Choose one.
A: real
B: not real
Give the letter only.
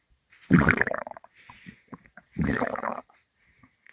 B